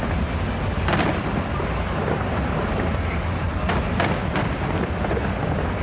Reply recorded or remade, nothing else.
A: recorded